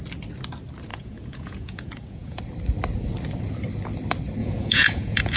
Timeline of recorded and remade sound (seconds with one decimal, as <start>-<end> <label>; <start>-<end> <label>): 0.0-0.9 recorded; 0.9-2.4 remade; 2.4-4.4 recorded; 4.4-5.4 remade